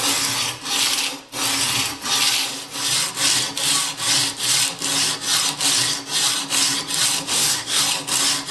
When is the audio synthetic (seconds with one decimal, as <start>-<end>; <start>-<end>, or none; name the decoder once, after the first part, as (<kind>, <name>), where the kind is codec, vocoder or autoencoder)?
7.3-7.8 (codec, SNAC)